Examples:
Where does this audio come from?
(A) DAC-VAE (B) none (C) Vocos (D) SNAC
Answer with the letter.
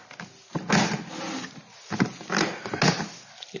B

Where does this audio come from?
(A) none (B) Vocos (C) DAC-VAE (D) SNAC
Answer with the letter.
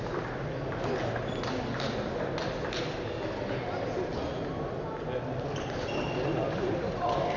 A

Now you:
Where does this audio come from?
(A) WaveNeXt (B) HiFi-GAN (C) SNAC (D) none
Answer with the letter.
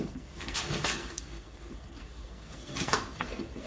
C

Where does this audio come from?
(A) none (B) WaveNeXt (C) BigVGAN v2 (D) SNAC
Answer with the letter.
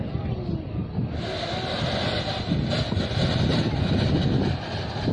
A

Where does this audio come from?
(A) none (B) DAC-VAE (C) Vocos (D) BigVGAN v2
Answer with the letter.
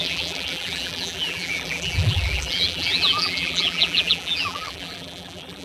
D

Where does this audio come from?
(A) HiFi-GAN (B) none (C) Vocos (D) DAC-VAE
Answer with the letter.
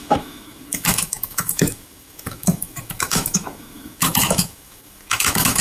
D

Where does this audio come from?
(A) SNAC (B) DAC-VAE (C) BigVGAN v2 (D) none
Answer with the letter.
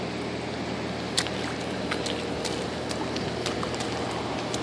D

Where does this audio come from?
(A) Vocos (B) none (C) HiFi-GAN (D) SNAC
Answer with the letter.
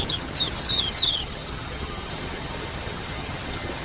C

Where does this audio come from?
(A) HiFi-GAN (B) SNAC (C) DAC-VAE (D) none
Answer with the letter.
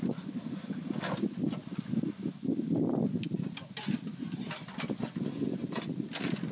D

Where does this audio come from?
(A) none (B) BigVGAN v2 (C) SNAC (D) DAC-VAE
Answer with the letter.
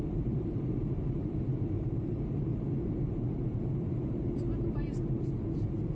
B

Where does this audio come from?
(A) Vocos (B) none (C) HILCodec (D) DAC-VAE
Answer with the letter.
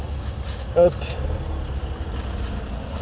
B